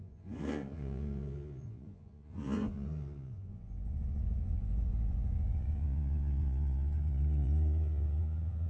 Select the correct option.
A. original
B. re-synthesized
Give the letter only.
B